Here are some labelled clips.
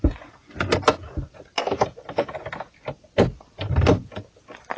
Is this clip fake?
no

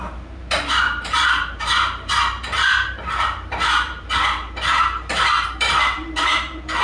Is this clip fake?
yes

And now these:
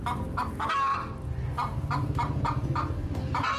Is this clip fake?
no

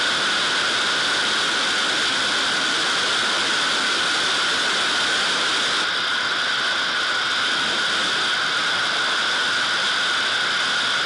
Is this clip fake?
no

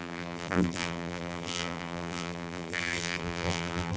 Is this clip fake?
yes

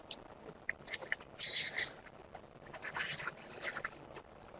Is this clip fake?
yes